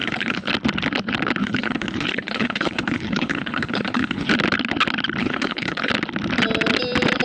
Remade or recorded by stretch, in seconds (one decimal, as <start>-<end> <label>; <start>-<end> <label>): 0.0-0.5 remade; 0.5-1.4 recorded; 1.4-4.3 remade; 4.3-5.2 recorded; 5.2-5.9 remade; 5.9-7.2 recorded